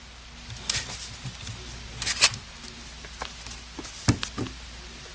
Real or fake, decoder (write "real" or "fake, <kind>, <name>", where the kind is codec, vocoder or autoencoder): real